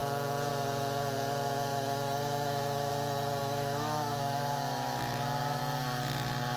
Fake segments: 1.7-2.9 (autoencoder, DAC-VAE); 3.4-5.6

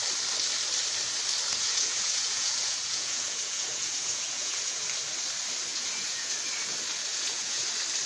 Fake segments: 1.5-4.8 (vocoder, Vocos); 5.7-6.3; 7.1-7.6

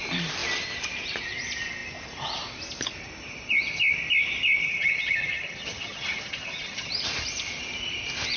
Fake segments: 4.6-6.9 (vocoder, HiFi-GAN)

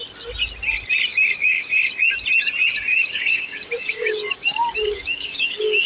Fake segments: 1.1-1.9 (codec, DAC); 2.9-5.9

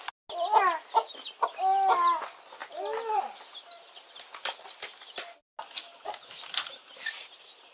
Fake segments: none

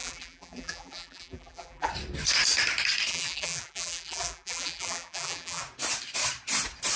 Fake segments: 0.0-1.9 (vocoder, BigVGAN v2); 3.1-5.6

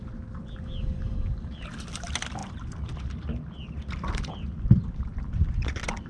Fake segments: 2.4-6.1 (vocoder, BigVGAN v2)